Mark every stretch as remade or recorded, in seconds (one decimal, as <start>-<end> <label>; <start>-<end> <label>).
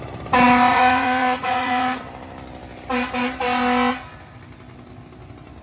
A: 0.0-0.7 recorded; 0.7-2.0 remade; 2.0-5.6 recorded